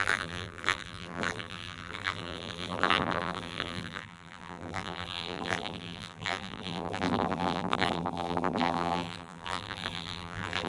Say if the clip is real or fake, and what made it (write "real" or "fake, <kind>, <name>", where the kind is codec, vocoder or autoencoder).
fake, vocoder, BigVGAN v2